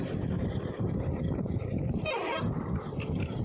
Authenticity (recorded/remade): remade